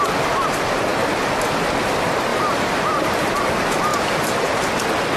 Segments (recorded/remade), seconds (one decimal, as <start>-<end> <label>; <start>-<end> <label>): 0.0-2.3 recorded; 2.3-3.4 remade; 3.4-3.9 recorded; 3.9-4.7 remade; 4.7-5.2 recorded